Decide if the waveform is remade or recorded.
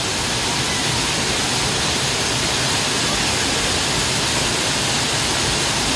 recorded